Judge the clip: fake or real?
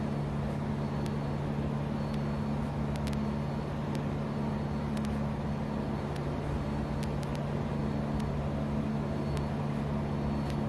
real